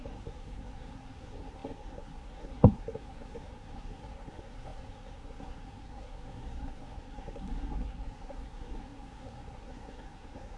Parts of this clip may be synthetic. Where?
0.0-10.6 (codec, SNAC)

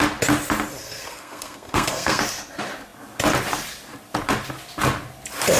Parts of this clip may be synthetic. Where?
0.8-2.2 (codec, SNAC)